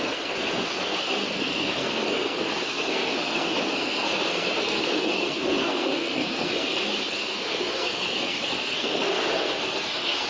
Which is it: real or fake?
fake